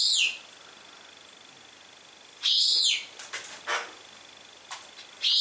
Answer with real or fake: real